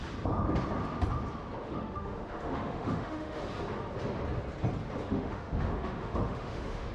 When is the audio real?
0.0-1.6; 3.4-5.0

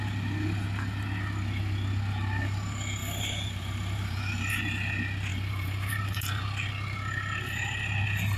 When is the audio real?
0.0-3.0; 4.5-5.3; 6.4-8.4

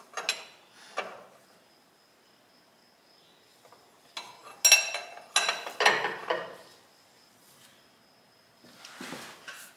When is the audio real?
0.0-9.8

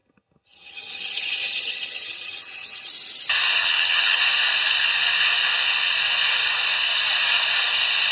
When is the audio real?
2.9-3.6; 4.2-8.1

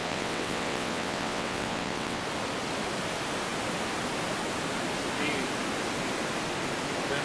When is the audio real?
2.2-7.2

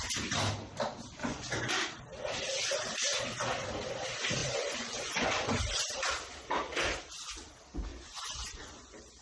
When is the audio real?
0.0-1.2; 1.7-4.4; 5.6-7.9